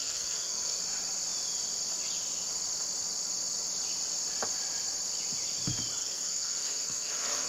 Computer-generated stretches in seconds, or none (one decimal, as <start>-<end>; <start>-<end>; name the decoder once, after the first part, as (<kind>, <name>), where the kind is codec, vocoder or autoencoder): 0.0-0.8 (codec, SNAC); 6.0-7.5